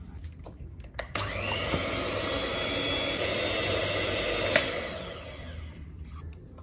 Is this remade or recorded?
recorded